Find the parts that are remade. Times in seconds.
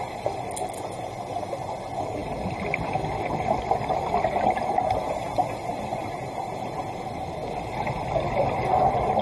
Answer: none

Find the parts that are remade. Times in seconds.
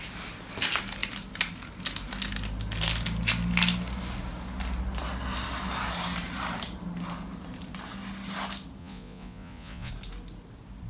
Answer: 8.8-9.9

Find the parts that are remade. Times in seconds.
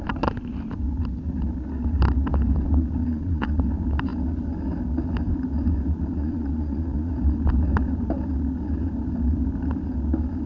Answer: 3.0-3.6; 6.2-7.1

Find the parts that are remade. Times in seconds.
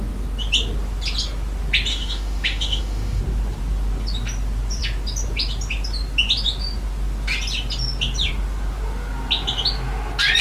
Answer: 1.9-3.2